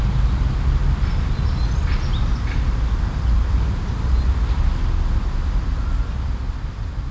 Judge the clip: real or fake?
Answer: real